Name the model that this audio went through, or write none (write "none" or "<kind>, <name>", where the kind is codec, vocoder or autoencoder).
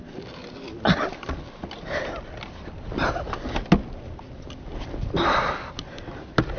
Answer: none